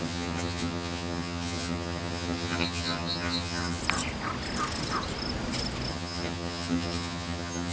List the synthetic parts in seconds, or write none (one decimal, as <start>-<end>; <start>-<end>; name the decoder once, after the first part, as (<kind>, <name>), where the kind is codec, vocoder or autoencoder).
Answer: 0.0-3.8 (vocoder, HiFi-GAN); 5.9-7.7